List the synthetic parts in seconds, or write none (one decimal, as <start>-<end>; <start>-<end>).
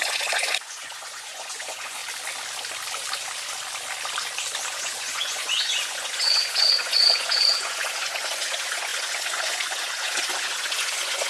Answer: 0.0-2.0; 4.7-11.3